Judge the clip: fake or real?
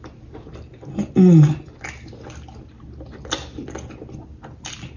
real